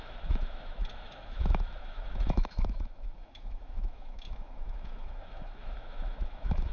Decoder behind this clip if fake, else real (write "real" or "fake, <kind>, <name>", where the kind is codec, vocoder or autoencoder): fake, autoencoder, DAC-VAE